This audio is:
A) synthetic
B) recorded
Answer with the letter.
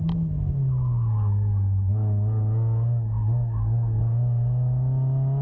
B